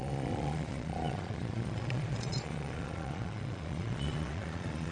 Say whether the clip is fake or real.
fake